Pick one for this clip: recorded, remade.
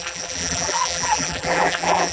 remade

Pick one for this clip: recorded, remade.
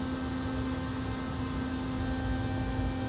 recorded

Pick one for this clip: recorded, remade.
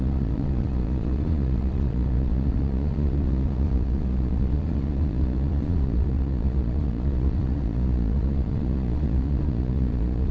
remade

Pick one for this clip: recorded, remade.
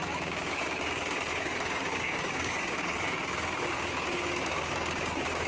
remade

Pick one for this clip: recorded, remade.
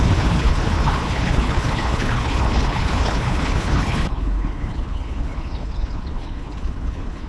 remade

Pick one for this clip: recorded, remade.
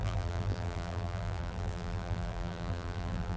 remade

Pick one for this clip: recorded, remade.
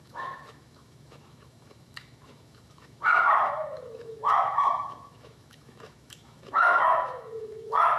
remade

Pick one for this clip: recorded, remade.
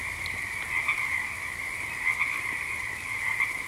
recorded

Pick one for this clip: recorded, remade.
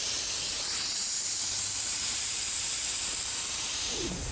remade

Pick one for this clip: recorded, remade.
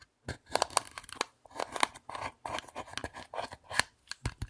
recorded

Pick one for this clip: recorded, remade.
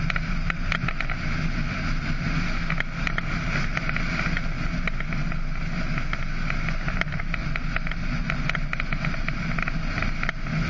recorded